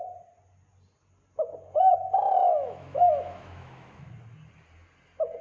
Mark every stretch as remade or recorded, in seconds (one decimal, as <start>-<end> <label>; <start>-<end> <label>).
0.0-2.4 recorded; 2.4-4.1 remade; 4.1-5.4 recorded